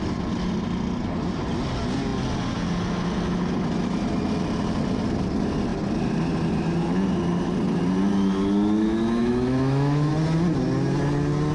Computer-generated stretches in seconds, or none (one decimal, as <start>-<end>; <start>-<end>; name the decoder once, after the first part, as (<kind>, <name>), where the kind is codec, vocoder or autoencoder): 9.2-10.1 (autoencoder, DAC-VAE)